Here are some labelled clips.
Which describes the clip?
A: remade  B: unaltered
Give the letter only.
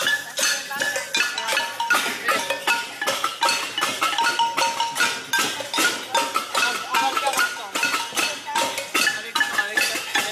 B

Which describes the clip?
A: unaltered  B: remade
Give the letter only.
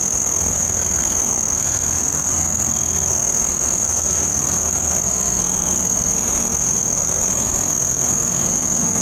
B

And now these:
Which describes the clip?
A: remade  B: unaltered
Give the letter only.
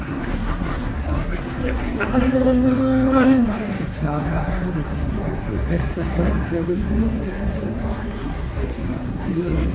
A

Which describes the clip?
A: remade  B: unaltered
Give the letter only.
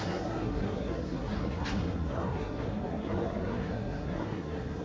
A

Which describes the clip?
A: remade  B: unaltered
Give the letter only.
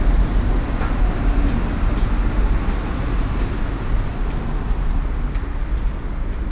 B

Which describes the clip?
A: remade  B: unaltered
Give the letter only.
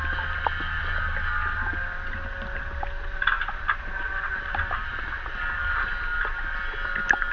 B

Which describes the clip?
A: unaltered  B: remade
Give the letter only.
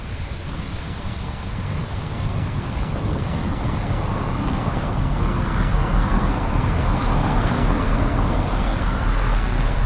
B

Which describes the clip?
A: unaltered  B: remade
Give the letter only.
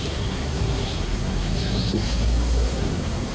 B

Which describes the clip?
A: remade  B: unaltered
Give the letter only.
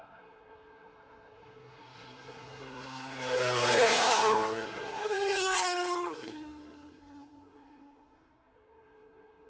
A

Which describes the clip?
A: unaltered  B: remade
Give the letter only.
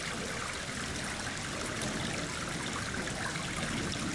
A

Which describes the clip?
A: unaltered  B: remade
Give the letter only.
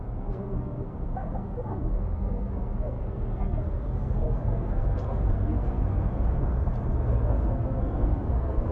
B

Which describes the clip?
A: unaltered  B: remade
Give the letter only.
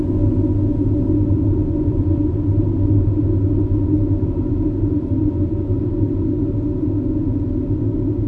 A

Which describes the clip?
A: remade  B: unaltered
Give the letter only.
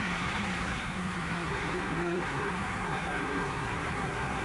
A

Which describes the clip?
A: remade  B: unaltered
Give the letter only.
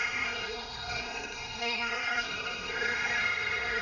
A